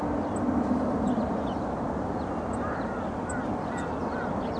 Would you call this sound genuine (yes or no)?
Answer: yes